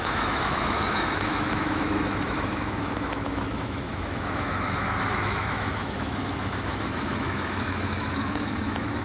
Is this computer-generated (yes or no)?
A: yes